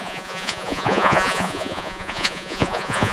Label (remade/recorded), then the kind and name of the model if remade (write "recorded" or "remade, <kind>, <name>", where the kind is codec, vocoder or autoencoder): remade, vocoder, Vocos